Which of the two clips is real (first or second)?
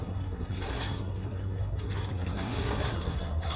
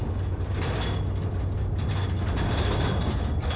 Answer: second